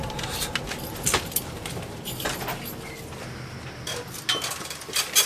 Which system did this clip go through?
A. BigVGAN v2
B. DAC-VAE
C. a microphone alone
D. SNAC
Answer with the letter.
C